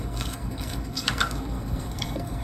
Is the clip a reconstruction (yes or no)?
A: yes